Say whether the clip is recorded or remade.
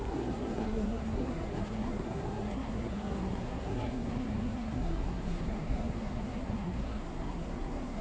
remade